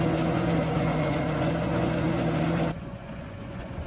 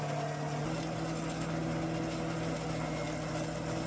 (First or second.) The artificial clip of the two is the first